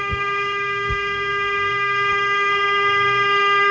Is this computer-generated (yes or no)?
yes